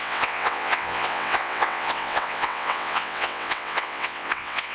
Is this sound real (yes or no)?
no